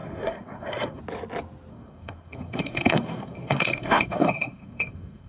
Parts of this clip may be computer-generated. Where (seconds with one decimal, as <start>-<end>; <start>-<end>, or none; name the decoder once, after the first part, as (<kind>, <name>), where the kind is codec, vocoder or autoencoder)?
0.0-1.0 (codec, SNAC); 1.7-5.3